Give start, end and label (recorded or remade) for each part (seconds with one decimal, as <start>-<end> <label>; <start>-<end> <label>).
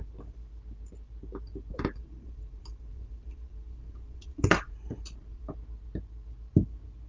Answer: 0.0-1.7 recorded; 1.7-5.5 remade; 5.5-7.1 recorded